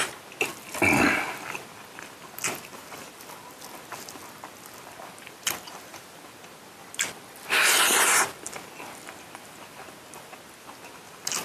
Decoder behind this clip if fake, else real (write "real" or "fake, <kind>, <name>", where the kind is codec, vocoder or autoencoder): real